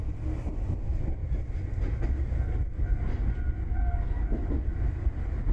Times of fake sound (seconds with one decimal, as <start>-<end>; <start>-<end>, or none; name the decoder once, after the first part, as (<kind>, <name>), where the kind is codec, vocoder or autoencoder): none